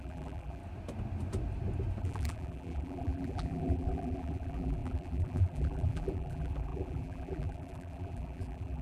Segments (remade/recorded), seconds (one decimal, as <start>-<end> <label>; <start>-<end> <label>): 0.0-0.6 remade; 0.6-2.0 recorded; 2.0-8.8 remade

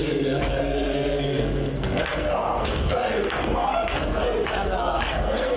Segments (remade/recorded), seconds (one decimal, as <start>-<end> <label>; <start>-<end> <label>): 0.0-5.6 remade